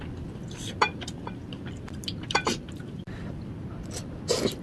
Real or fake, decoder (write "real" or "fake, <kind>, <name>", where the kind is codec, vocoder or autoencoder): real